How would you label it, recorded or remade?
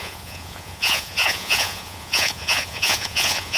remade